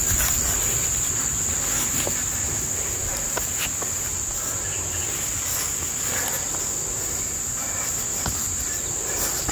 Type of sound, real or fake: real